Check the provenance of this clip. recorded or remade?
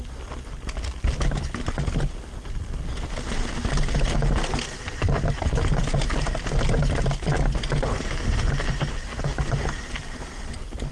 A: recorded